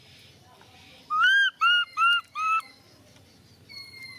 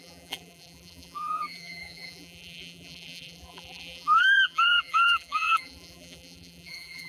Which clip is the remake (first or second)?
second